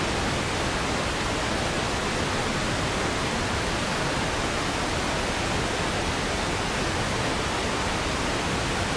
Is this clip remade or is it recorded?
recorded